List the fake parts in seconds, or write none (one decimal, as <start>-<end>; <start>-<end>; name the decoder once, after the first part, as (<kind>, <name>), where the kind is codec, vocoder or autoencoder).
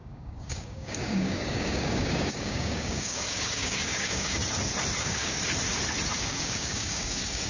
0.0-4.4 (codec, DAC); 5.0-5.4; 6.2-7.5